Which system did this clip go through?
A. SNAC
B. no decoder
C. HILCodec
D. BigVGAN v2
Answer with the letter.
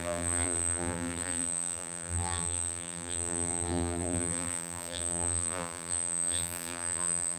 D